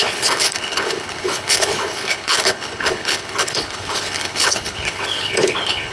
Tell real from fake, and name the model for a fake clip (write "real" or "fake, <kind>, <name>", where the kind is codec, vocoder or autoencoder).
fake, codec, HILCodec